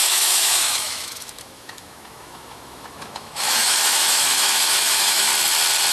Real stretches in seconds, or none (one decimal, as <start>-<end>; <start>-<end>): 5.3-5.9